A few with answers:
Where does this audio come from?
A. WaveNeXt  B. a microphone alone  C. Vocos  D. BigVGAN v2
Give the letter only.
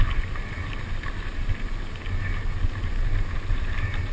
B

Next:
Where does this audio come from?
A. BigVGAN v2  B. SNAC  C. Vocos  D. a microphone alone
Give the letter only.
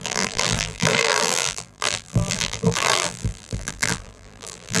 A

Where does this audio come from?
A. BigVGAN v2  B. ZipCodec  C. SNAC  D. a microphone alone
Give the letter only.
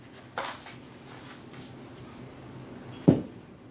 D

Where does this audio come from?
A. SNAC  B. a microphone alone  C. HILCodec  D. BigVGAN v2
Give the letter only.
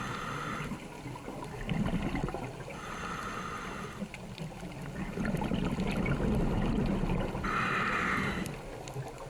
B